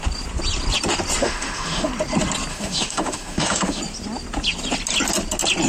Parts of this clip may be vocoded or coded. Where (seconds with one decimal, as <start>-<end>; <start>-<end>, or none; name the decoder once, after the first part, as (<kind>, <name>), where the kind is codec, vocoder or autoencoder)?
1.2-1.9 (autoencoder, DAC-VAE); 2.5-3.8

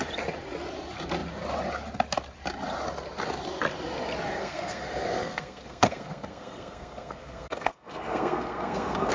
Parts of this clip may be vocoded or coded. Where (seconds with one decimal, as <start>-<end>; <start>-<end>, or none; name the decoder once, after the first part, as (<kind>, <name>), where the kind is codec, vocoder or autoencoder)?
4.4-9.1 (codec, SNAC)